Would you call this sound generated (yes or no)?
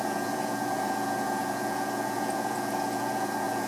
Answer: yes